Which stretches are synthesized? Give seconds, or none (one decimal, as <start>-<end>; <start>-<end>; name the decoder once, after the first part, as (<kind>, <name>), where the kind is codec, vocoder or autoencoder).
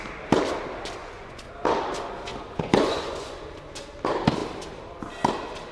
1.0-1.5 (vocoder, Vocos); 2.3-3.4